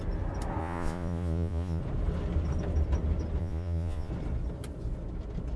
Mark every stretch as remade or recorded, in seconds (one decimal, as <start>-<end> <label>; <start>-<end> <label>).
0.0-0.6 recorded; 0.6-1.8 remade; 1.8-3.4 recorded; 3.4-4.1 remade; 4.1-5.6 recorded